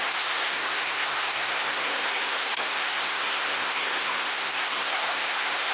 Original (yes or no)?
no